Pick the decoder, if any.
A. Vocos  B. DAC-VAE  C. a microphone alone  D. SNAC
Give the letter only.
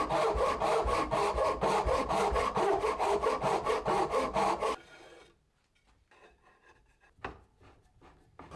C